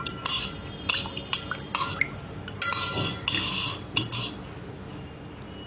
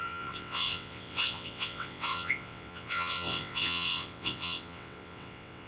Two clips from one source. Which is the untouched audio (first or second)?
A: first